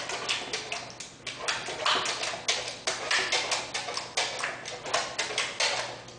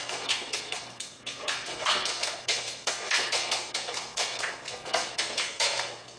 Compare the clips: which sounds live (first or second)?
first